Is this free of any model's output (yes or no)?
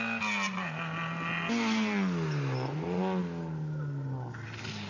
yes